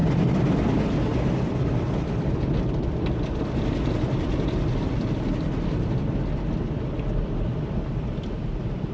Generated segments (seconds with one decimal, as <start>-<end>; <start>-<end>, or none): none